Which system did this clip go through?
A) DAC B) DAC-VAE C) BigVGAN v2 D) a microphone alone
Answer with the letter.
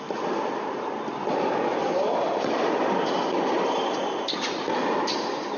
D